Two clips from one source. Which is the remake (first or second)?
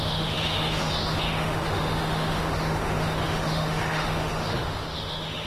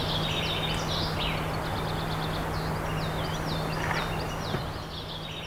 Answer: first